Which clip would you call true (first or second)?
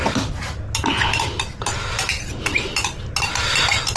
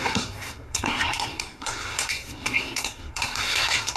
first